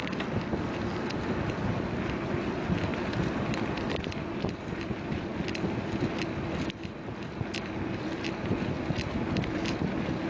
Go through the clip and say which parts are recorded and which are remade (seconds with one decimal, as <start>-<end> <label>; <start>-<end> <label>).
0.0-2.9 recorded; 2.9-3.8 remade; 3.8-10.3 recorded